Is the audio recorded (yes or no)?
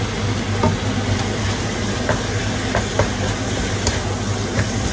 yes